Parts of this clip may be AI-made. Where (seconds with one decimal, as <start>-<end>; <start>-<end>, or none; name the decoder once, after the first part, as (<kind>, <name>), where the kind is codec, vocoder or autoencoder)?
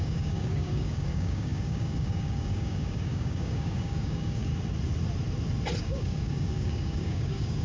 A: 0.0-4.5 (codec, DAC); 5.8-7.6